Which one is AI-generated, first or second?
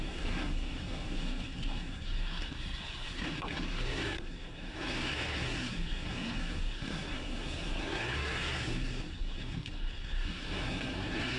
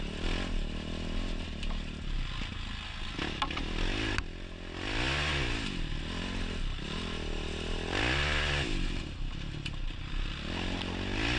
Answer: first